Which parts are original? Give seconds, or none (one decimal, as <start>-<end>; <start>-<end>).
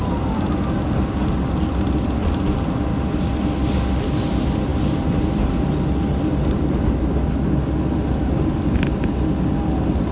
0.0-10.1